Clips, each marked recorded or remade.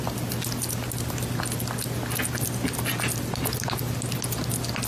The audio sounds recorded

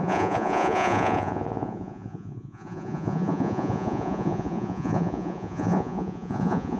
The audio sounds remade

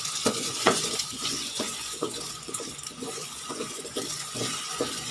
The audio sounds remade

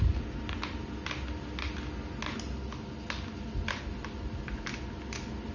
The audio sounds recorded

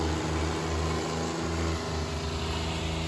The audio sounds recorded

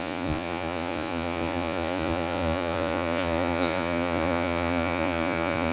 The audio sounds remade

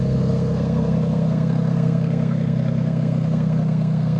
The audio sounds remade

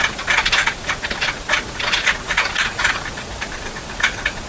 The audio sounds remade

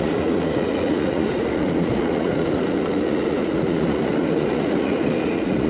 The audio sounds remade